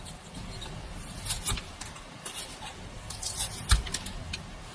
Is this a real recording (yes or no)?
yes